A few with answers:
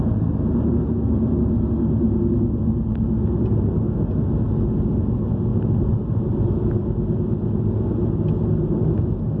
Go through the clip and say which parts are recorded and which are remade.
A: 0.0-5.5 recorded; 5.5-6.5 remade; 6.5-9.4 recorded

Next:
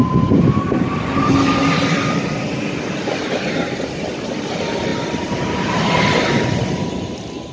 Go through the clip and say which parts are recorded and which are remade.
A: 0.0-7.5 recorded

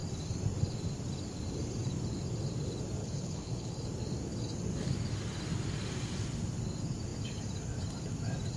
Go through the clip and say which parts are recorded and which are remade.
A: 0.0-3.0 recorded; 3.0-3.7 remade; 3.7-8.6 recorded